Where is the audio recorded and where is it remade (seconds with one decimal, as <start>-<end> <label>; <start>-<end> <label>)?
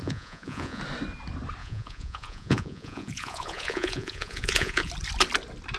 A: 0.0-0.8 remade; 0.8-1.6 recorded; 1.6-4.9 remade; 4.9-5.8 recorded